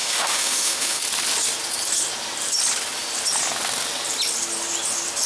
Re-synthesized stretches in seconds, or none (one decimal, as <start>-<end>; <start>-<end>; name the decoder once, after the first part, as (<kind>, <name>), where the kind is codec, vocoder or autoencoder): 0.0-1.0 (autoencoder, DAC-VAE)